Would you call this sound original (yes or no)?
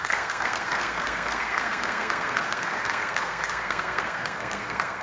no